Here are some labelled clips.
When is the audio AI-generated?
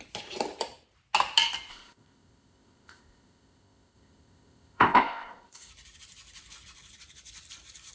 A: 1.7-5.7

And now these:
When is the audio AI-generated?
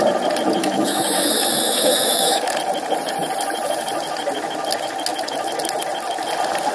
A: 0.6-2.4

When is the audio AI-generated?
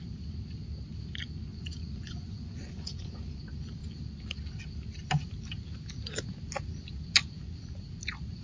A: 1.5-3.4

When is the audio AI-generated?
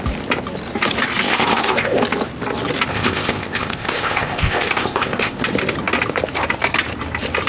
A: 1.3-2.0; 2.9-5.4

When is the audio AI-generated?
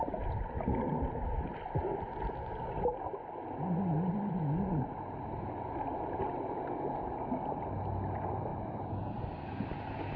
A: none